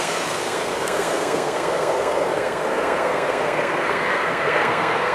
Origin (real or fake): fake